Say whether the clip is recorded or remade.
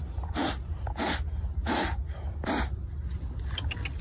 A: recorded